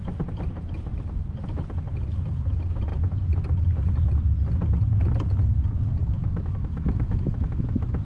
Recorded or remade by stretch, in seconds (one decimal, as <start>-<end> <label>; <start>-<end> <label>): 0.0-6.0 recorded; 6.0-8.0 remade